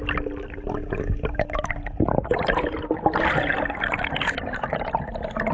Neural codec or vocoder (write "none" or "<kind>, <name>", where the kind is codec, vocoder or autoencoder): none